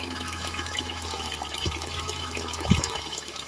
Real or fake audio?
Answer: fake